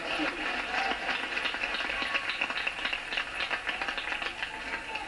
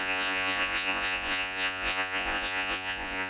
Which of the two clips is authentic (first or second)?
first